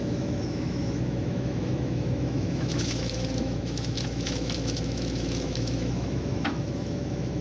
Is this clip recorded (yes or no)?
no